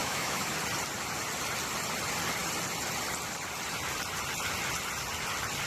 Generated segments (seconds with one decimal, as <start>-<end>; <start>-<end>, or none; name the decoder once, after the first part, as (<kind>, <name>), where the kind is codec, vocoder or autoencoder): 0.0-0.5 (autoencoder, DAC-VAE)